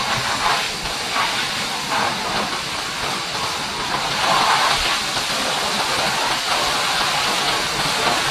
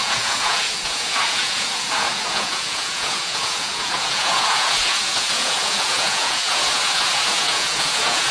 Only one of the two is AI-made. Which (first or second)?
second